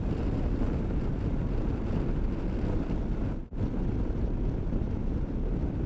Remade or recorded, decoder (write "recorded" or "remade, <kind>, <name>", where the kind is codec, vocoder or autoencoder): recorded